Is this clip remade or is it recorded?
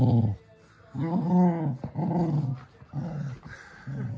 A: recorded